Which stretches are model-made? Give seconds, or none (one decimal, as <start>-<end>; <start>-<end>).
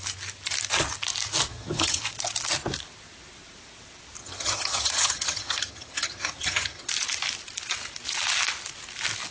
1.5-2.0; 4.2-6.9